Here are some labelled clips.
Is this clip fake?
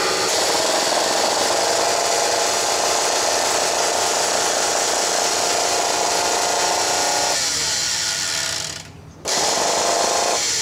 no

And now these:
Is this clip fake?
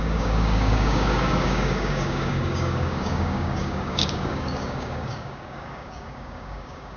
yes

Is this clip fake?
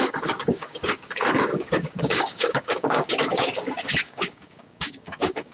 yes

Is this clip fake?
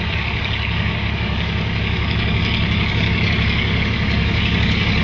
yes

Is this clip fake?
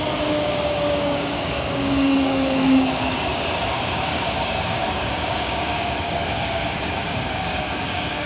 yes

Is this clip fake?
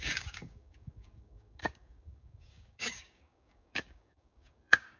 yes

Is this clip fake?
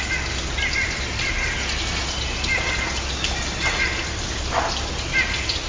no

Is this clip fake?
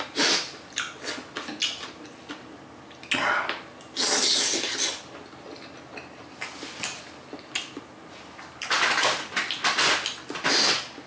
no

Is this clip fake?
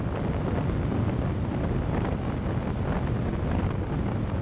no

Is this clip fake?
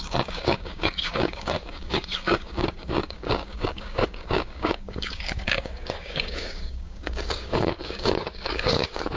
yes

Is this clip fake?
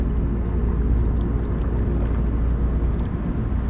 no